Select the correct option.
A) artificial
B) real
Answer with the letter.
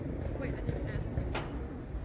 B